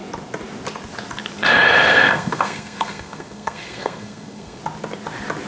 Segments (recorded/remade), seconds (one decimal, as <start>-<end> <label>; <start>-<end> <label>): 0.0-1.9 recorded; 1.9-4.6 remade; 4.6-5.5 recorded